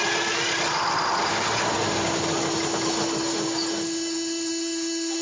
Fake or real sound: real